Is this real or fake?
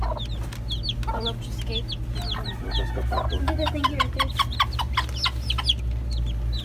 real